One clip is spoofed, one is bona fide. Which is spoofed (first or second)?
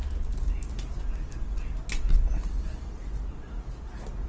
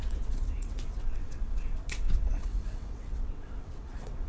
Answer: second